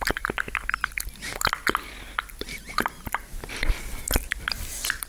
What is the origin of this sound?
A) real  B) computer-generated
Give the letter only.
A